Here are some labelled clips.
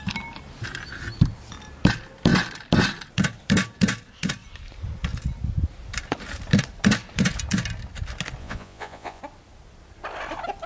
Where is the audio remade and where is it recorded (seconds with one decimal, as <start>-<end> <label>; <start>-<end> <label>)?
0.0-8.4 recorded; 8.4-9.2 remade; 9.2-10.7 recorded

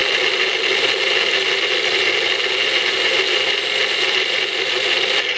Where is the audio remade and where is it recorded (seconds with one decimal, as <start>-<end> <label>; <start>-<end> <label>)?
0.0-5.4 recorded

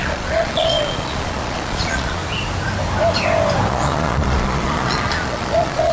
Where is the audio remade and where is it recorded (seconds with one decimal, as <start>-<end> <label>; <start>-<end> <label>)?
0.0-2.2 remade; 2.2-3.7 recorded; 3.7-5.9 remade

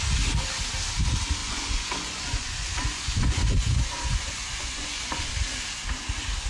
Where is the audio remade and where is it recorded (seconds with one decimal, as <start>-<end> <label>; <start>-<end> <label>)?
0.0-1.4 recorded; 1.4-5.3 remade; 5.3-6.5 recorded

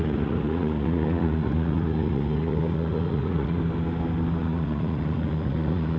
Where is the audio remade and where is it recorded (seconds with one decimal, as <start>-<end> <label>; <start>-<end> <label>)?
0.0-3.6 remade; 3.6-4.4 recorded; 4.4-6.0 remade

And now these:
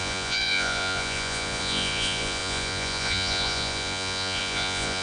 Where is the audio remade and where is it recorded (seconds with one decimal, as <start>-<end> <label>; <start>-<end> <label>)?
0.0-5.0 remade

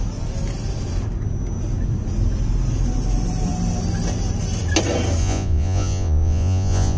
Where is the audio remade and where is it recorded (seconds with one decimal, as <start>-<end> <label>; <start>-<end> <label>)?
0.0-5.2 recorded; 5.2-7.0 remade